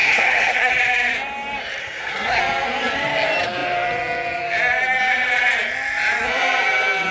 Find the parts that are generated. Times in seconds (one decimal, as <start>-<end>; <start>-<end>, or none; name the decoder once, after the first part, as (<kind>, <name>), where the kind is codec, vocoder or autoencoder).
0.0-0.7 (codec, SNAC); 1.8-2.4